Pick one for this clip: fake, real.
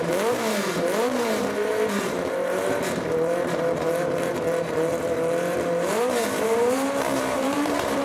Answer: fake